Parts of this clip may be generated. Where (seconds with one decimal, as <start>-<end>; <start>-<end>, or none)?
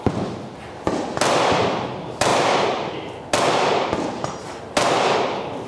none